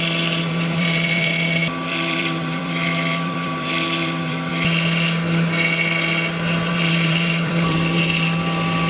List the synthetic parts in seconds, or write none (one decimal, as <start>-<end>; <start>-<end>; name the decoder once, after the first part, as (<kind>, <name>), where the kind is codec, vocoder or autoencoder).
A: 0.0-4.5 (vocoder, BigVGAN v2); 6.7-8.9